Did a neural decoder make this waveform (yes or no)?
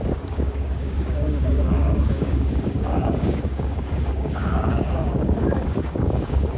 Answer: yes